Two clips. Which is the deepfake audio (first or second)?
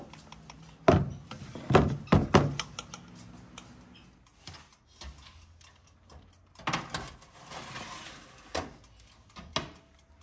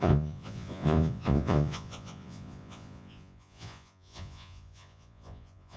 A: second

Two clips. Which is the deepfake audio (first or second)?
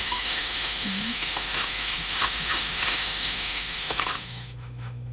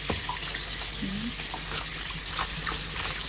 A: first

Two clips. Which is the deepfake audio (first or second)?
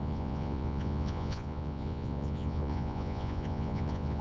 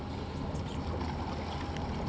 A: first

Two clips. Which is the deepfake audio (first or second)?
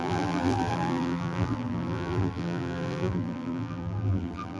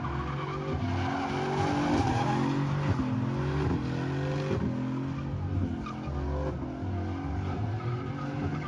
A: first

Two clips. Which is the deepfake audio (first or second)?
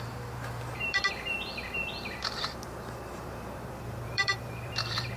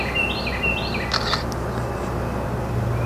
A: first